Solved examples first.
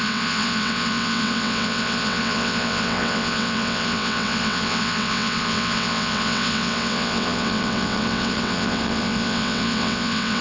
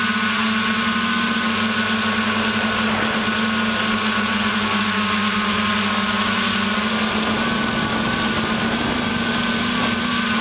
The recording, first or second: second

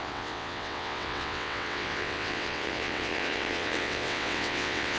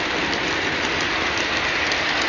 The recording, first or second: second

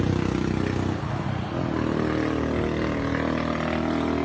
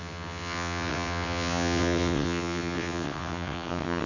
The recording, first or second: first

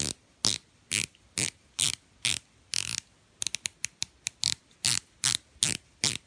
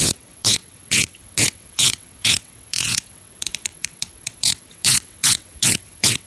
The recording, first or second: first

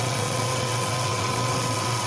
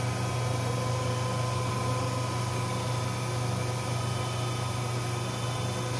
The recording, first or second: second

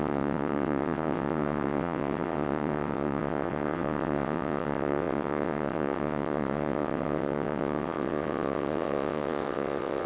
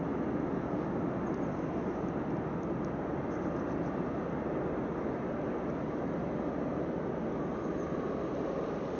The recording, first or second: second